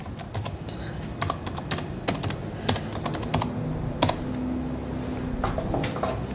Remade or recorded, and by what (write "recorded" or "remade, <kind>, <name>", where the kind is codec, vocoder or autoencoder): recorded